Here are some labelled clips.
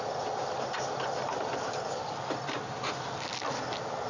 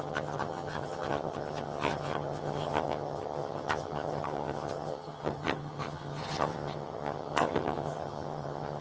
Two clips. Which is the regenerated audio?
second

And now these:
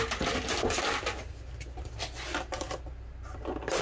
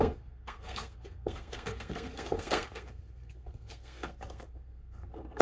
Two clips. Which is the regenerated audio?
second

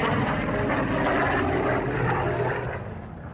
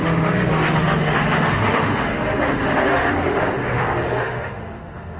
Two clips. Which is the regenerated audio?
second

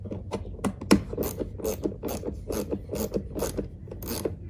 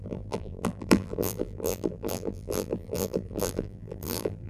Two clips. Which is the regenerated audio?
second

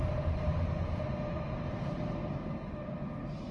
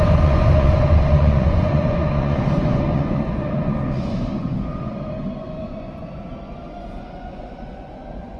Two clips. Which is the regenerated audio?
second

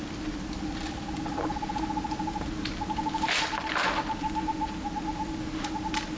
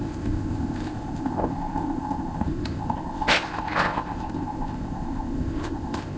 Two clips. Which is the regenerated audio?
second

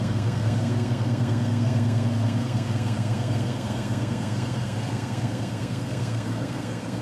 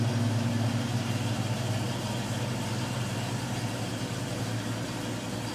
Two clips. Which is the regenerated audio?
first